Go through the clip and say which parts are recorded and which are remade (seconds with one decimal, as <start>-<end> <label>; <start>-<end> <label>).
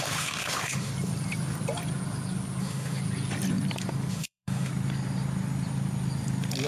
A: 0.0-0.9 remade; 0.9-2.6 recorded; 2.6-3.0 remade; 3.0-4.1 recorded; 4.1-4.7 remade; 4.7-6.7 recorded